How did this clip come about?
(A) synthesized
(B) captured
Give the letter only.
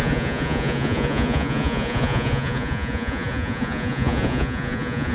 A